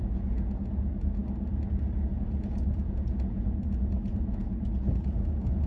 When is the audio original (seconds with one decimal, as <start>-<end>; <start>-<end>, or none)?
0.6-2.1

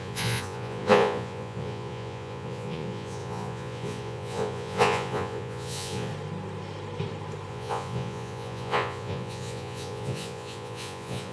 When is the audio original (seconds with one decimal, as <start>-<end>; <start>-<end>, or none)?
6.1-7.5

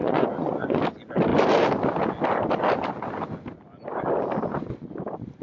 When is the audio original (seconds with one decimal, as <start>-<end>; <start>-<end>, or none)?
0.8-5.4

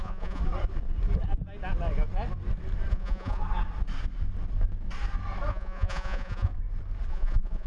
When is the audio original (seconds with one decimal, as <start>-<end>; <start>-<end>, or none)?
0.4-2.9; 3.4-5.5; 6.5-7.1

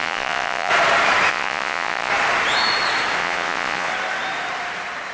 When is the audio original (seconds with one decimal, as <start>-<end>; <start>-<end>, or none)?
0.7-1.3; 2.1-3.2; 3.9-5.1

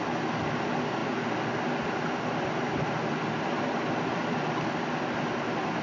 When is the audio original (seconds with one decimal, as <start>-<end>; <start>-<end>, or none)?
0.0-5.8

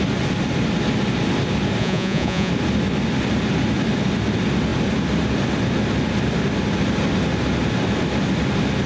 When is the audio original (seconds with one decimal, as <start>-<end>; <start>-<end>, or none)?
0.0-1.8; 2.5-8.9

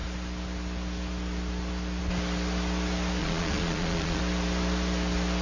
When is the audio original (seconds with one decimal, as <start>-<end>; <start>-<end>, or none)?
0.0-3.2; 4.2-5.4